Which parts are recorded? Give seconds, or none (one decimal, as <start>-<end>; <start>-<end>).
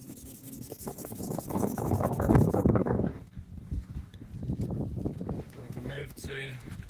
4.3-5.4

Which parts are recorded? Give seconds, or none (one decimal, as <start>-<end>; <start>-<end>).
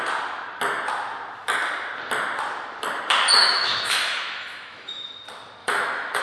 0.0-3.4; 5.1-5.6